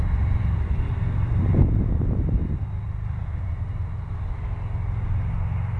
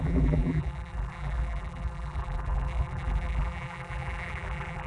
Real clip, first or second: first